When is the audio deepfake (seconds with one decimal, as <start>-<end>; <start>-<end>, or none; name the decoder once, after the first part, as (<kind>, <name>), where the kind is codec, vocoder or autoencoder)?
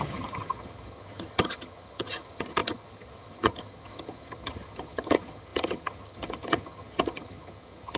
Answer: 0.0-8.0 (vocoder, HiFi-GAN)